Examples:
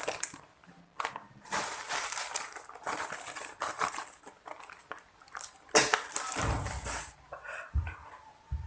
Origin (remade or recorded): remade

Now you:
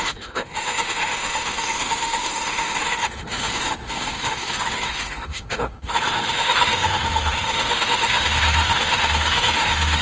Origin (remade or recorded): remade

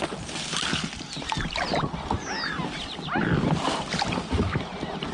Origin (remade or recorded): recorded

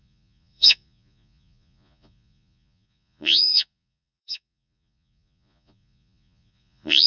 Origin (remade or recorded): remade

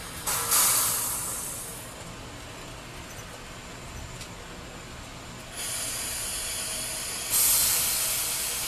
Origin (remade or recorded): recorded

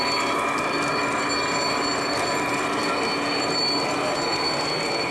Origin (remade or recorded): recorded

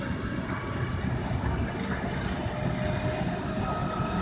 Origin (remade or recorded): recorded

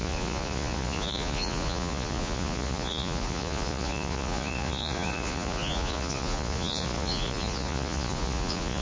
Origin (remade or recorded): remade